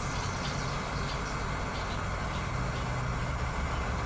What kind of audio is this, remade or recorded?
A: recorded